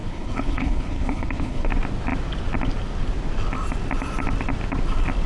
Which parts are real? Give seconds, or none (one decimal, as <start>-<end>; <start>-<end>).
1.7-5.3